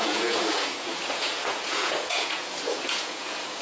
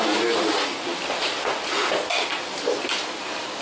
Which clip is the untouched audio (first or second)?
second